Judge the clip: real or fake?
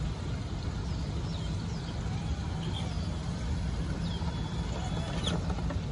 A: real